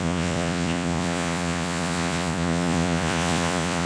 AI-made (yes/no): yes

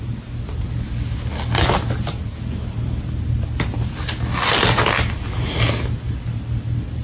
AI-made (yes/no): no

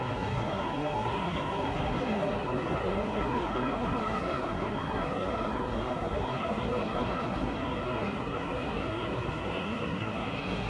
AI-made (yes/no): yes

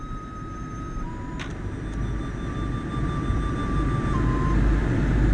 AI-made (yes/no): no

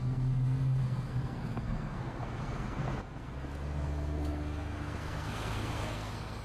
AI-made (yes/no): yes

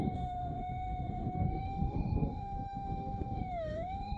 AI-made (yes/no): yes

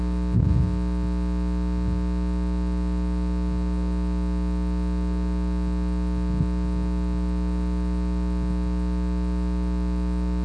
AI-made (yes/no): no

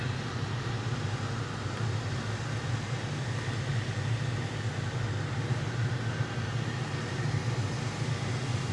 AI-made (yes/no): no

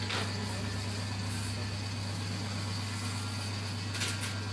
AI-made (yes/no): no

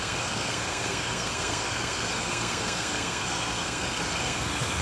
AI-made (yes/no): yes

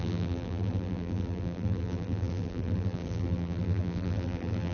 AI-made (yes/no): yes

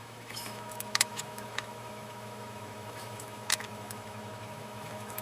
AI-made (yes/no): yes